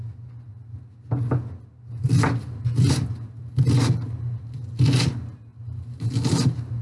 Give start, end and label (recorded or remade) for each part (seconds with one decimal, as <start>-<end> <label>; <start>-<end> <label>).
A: 0.0-6.8 recorded